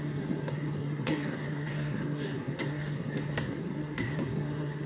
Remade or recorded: remade